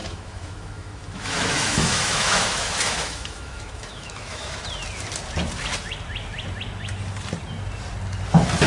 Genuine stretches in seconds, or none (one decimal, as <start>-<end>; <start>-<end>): 4.6-8.7